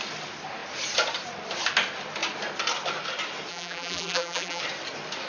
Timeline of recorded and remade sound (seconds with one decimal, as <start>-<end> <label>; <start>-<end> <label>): 0.0-3.5 recorded; 3.5-4.6 remade; 4.6-5.3 recorded